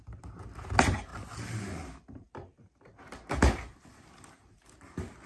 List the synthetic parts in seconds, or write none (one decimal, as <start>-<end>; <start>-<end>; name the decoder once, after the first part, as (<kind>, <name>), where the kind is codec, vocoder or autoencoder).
none